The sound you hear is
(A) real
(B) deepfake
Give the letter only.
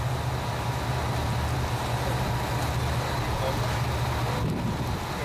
A